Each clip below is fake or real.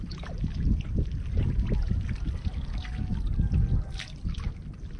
real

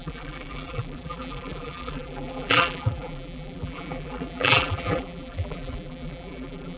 fake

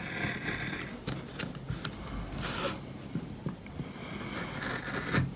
real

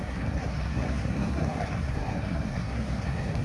fake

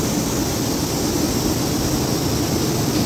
real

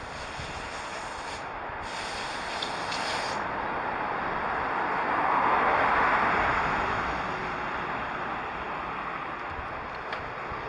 real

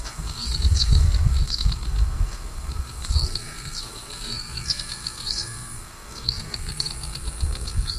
fake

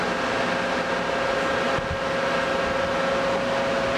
real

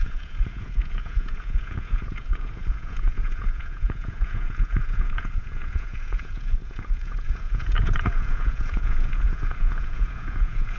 fake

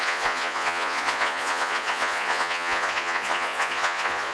fake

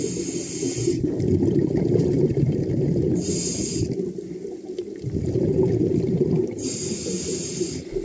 real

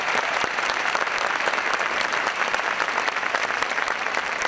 fake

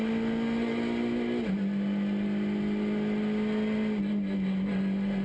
real